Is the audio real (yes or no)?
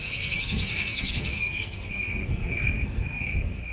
no